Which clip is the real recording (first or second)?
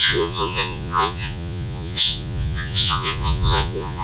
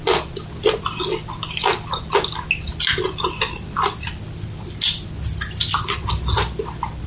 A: second